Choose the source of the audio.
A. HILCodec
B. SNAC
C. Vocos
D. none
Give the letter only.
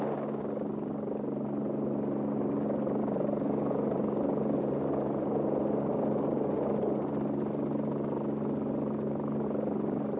D